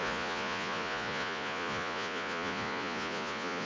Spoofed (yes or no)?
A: yes